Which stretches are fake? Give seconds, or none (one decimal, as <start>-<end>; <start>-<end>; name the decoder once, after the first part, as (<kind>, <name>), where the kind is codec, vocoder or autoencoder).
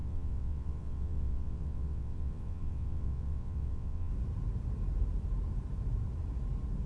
0.0-4.1 (vocoder, WaveNeXt)